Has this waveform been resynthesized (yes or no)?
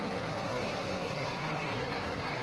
yes